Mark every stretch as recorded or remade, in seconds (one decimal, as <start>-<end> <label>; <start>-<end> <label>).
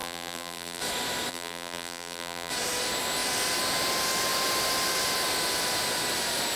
0.0-0.8 remade; 0.8-1.3 recorded; 1.3-2.5 remade; 2.5-6.6 recorded